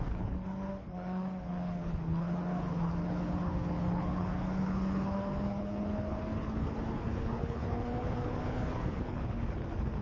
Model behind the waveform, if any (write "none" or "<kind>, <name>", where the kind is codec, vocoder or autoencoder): codec, HILCodec